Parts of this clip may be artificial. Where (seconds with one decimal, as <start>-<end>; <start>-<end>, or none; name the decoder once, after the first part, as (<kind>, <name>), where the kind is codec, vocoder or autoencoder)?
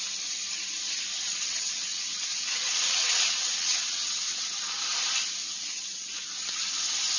1.3-4.6 (vocoder, WaveNeXt); 5.4-6.1